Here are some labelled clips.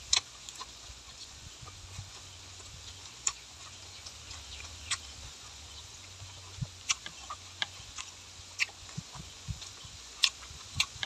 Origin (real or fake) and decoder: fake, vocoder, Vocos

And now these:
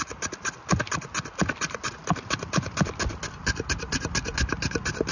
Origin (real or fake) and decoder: real